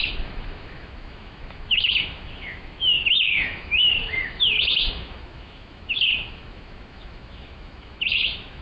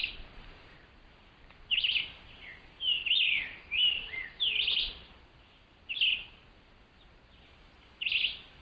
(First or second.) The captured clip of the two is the second